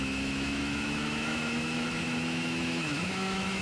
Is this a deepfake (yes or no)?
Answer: yes